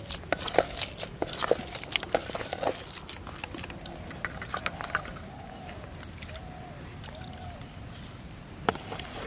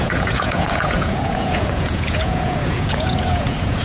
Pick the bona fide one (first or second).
first